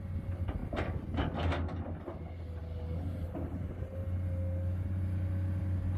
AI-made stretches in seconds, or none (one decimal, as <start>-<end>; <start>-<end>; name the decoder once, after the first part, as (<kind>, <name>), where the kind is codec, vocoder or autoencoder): none